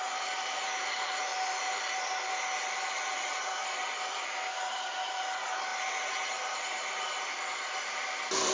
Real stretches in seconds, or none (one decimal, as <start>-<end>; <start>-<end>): 0.0-1.3; 1.8-8.5